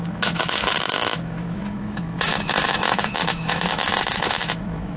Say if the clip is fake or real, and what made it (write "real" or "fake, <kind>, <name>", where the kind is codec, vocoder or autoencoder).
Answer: fake, autoencoder, DAC-VAE